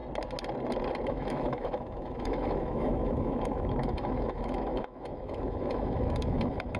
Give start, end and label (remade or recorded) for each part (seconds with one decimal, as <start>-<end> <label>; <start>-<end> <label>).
0.0-1.1 recorded; 1.1-6.8 remade